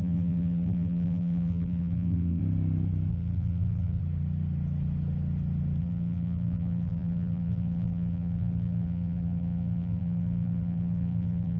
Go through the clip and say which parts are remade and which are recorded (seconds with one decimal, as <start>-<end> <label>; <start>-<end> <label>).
0.0-2.4 remade; 2.4-3.1 recorded; 3.1-4.0 remade; 4.0-5.8 recorded; 5.8-11.6 remade